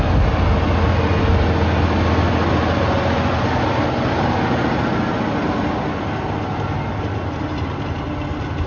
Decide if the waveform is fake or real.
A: real